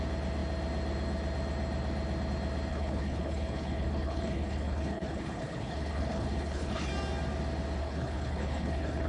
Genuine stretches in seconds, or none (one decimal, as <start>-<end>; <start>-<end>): 0.0-2.7; 6.9-7.8

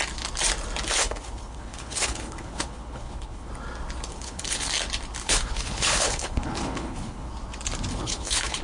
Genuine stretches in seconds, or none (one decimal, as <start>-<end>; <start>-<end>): 0.0-1.0; 3.5-4.1; 4.7-5.2; 7.3-7.9

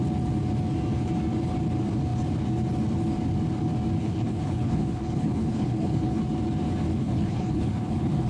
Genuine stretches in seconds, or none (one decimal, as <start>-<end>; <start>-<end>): 0.0-4.0; 6.2-6.9

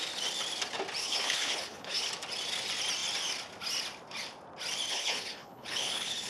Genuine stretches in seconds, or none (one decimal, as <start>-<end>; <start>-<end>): 0.0-1.0; 2.1-4.9

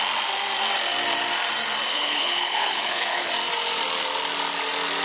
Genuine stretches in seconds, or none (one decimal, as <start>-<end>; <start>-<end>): 0.0-1.9; 3.3-5.0

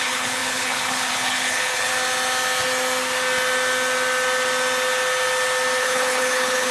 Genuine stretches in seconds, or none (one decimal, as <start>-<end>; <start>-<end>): 1.9-5.8

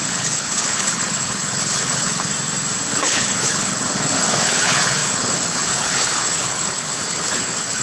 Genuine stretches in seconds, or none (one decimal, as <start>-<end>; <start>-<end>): 2.3-2.9

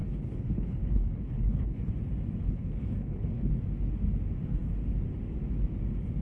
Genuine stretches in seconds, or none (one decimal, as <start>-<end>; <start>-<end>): 1.9-2.4; 3.5-6.2